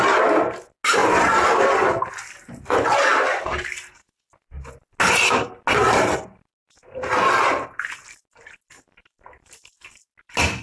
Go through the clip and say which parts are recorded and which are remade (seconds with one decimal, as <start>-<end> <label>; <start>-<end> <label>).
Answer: 0.0-1.0 recorded; 1.0-2.6 remade; 2.6-10.6 recorded